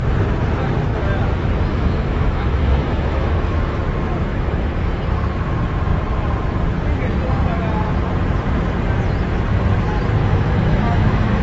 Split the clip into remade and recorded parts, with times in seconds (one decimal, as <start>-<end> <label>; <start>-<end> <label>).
0.0-1.7 recorded; 1.7-3.8 remade; 3.8-4.3 recorded; 4.3-4.9 remade; 4.9-10.2 recorded; 10.2-11.4 remade